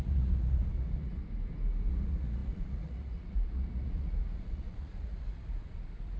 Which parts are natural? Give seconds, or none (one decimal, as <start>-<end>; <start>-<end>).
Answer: 1.2-1.9